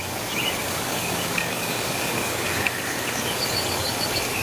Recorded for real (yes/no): no